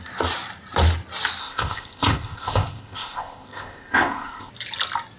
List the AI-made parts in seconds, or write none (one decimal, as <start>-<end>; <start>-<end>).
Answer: 1.4-4.5